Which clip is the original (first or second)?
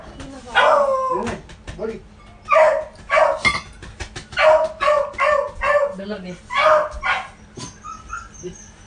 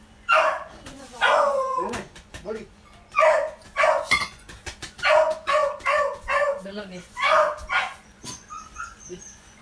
first